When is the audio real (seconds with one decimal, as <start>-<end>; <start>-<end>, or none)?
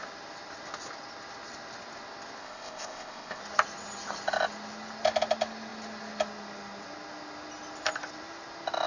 0.0-2.4; 3.4-8.9